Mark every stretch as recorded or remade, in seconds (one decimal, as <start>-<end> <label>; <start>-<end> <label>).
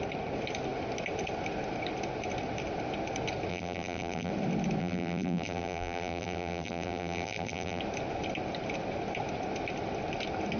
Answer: 0.0-3.5 recorded; 3.5-4.3 remade; 4.3-4.8 recorded; 4.8-7.8 remade; 7.8-10.6 recorded